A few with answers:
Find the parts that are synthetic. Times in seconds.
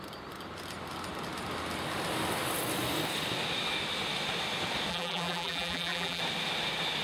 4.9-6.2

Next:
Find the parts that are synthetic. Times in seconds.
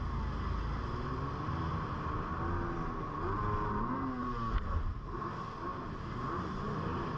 none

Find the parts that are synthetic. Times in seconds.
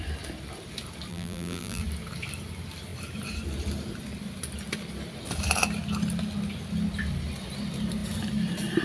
1.1-1.8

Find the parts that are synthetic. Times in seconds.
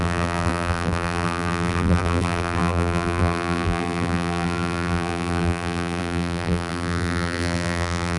0.0-8.2